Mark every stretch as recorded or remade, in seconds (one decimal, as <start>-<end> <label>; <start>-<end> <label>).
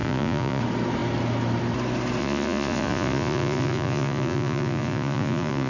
0.0-0.6 remade; 0.6-2.2 recorded; 2.2-5.7 remade